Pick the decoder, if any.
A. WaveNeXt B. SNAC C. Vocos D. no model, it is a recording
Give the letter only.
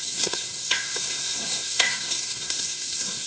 B